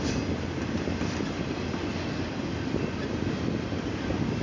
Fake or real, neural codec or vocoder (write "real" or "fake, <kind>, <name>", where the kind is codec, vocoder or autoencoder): real